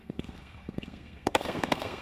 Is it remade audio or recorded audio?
remade